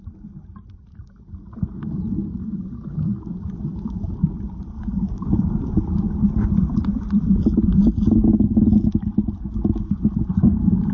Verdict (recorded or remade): recorded